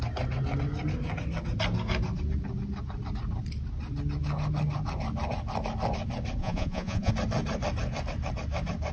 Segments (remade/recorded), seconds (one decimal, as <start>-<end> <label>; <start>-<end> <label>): 0.0-6.4 recorded; 6.4-7.1 remade; 7.1-8.9 recorded